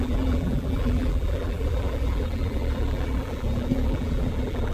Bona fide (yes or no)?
no